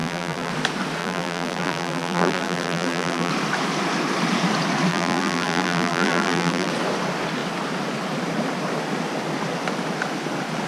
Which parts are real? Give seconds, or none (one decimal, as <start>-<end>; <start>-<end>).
0.5-1.0; 3.3-4.9; 6.7-10.7